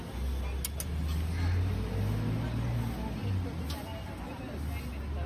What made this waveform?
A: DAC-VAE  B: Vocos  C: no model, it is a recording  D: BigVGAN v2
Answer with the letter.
C